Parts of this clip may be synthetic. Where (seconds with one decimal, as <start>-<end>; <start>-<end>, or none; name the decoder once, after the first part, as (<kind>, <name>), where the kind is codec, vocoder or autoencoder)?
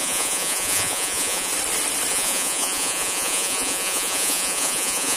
0.0-1.5 (vocoder, Vocos); 2.1-5.2